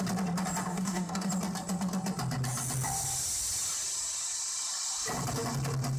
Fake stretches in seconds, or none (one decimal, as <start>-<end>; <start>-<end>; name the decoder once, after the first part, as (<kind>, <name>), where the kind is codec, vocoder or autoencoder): 0.7-1.3 (codec, DAC)